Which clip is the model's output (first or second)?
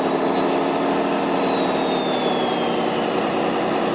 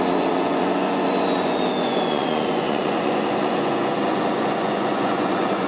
second